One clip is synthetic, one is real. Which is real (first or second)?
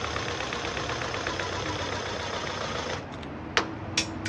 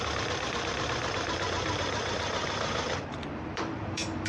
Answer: first